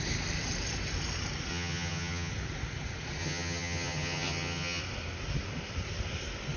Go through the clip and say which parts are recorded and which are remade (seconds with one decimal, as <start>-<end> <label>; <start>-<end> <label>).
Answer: 0.0-1.5 recorded; 1.5-2.3 remade; 2.3-3.2 recorded; 3.2-4.8 remade; 4.8-6.6 recorded